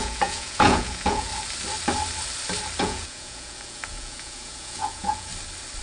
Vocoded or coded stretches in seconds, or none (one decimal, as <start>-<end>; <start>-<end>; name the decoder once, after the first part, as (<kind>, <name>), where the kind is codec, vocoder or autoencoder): 0.0-1.3 (vocoder, Vocos); 2.8-5.3